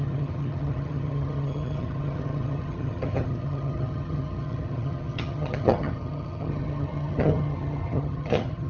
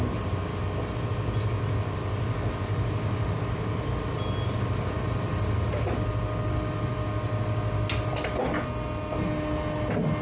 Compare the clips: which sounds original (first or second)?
second